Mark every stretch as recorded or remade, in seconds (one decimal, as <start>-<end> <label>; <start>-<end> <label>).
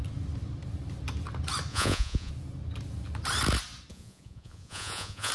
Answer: 0.0-1.7 recorded; 1.7-2.3 remade; 2.3-3.9 recorded; 3.9-5.3 remade